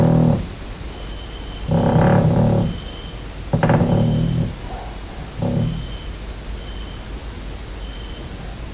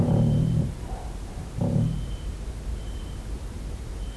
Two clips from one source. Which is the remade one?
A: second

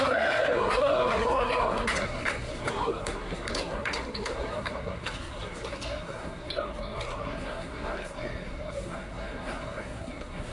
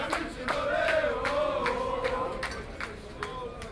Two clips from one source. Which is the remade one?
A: first